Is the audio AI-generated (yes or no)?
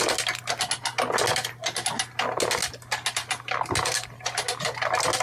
no